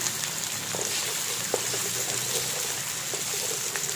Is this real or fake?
real